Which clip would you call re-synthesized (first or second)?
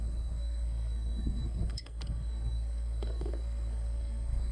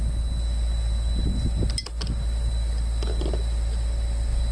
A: first